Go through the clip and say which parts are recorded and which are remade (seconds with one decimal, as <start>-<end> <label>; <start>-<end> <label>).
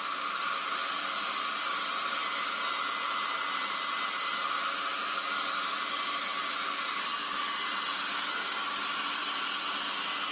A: 0.0-10.3 recorded